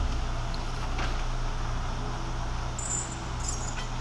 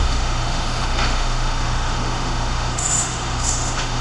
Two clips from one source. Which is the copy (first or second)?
second